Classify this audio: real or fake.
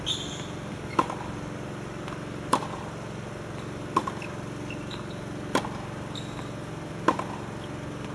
real